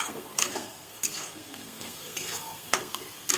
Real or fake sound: fake